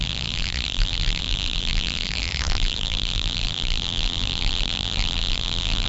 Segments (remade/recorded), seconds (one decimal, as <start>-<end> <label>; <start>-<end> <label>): 0.0-5.9 remade